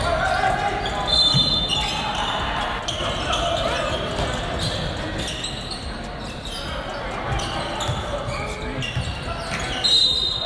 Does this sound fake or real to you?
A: real